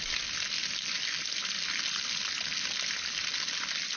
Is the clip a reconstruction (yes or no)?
no